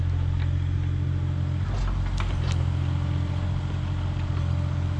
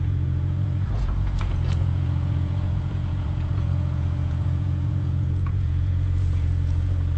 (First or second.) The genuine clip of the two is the first